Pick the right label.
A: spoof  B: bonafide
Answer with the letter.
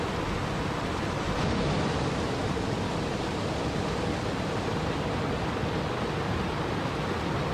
B